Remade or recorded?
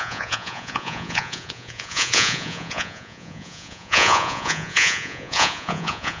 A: remade